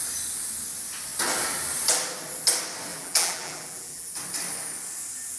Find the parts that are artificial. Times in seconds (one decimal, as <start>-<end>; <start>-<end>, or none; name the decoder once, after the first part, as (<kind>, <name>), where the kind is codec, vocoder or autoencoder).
2.9-4.1 (vocoder, BigVGAN v2)